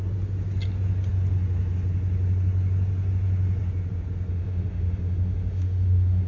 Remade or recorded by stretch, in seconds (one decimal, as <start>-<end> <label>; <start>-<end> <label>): 0.0-4.3 recorded; 4.3-6.3 remade